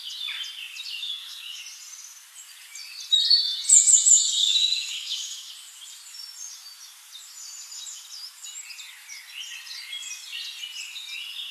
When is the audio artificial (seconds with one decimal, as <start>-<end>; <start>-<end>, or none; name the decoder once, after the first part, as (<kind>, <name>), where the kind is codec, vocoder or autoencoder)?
1.0-1.6 (codec, DAC); 4.4-5.5